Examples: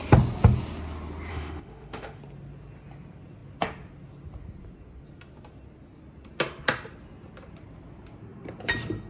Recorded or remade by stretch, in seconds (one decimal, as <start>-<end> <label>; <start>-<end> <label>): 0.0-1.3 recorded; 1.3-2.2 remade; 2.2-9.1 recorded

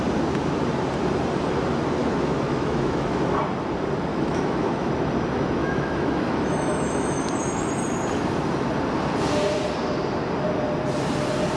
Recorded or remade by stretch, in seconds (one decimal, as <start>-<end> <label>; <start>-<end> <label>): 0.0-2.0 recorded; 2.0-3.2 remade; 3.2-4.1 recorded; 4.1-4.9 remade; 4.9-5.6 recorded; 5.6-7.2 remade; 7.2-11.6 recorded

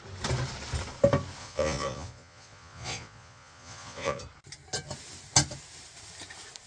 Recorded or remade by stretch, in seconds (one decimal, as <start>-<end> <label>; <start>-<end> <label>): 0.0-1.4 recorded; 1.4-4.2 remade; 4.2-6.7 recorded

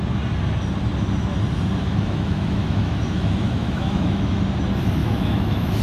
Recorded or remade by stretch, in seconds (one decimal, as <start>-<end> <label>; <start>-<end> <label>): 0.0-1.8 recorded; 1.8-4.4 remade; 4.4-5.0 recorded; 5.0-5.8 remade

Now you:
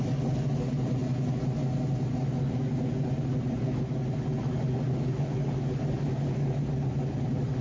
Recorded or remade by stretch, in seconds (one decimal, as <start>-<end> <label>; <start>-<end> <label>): 0.0-7.6 recorded

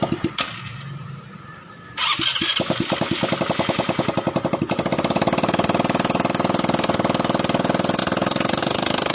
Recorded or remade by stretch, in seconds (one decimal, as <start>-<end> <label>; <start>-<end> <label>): 0.0-8.0 recorded; 8.0-8.6 remade; 8.6-9.1 recorded

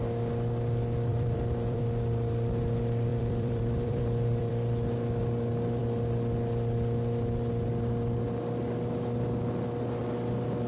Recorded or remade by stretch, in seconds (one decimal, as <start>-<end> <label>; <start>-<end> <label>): 0.0-1.1 recorded; 1.1-1.8 remade; 1.8-3.1 recorded; 3.1-4.5 remade; 4.5-10.7 recorded

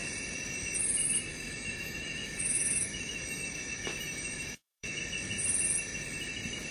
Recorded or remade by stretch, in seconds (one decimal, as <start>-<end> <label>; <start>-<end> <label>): 0.0-1.3 recorded; 1.3-5.0 remade; 5.0-6.7 recorded